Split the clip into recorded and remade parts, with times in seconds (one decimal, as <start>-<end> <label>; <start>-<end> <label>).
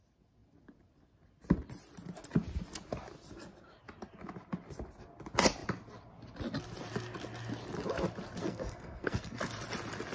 0.0-8.4 recorded; 8.4-9.4 remade; 9.4-10.1 recorded